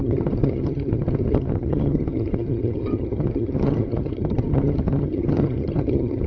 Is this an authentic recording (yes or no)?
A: no